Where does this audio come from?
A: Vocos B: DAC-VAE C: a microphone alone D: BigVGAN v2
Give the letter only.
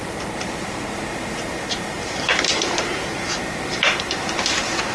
D